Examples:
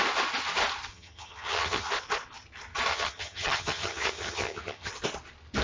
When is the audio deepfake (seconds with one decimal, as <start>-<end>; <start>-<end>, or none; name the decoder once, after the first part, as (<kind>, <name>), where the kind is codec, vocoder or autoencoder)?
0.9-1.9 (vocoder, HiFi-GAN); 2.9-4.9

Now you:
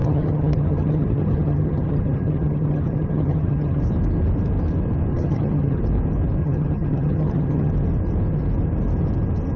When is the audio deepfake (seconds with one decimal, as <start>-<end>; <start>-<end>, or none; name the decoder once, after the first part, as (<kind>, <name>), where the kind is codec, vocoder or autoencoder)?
0.0-3.8 (vocoder, HiFi-GAN); 5.1-5.8; 6.4-7.7

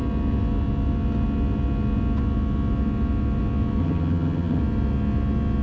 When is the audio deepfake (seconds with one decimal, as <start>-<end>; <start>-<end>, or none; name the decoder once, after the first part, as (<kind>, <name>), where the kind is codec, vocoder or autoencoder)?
3.8-4.6 (vocoder, HiFi-GAN)